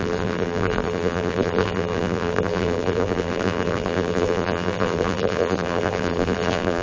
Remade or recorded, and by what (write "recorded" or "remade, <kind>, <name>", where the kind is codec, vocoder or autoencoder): remade, vocoder, BigVGAN v2